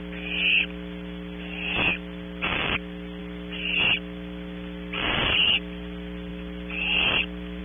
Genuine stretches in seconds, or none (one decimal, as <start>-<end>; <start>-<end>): 0.0-7.6